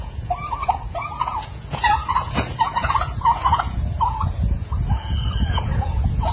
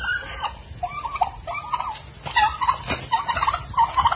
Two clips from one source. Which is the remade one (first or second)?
first